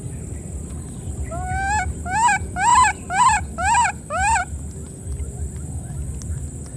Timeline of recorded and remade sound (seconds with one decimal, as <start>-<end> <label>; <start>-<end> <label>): 0.0-6.8 recorded